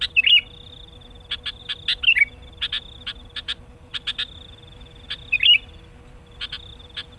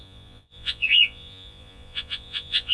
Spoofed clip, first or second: second